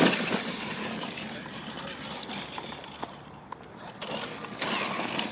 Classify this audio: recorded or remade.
recorded